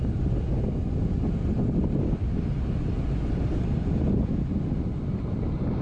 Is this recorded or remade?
recorded